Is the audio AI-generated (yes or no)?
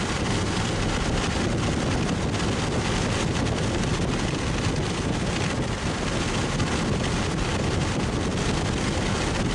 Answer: no